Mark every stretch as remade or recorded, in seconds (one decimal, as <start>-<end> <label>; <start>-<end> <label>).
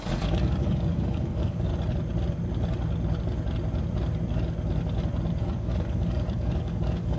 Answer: 0.0-1.7 remade; 1.7-5.4 recorded; 5.4-7.2 remade